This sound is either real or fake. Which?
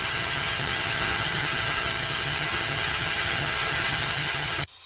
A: fake